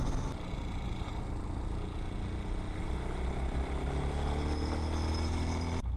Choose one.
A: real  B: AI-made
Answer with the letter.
A